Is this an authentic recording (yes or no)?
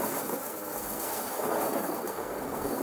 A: no